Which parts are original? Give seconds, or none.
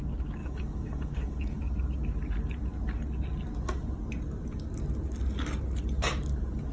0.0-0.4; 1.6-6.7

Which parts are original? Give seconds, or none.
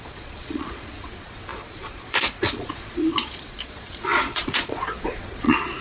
none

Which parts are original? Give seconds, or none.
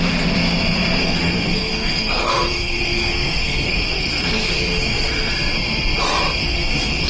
0.0-1.0; 5.3-6.4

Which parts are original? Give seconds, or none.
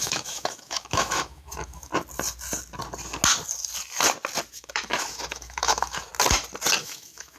1.9-4.5; 6.1-6.8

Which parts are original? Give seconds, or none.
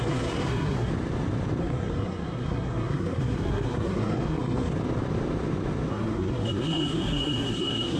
0.9-1.6; 4.7-5.9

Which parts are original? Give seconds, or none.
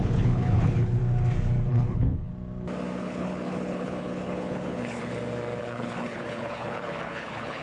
1.0-1.7; 2.3-3.0; 5.0-5.6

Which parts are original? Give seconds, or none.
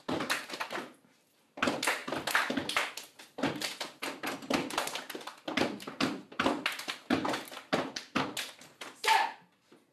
0.0-9.9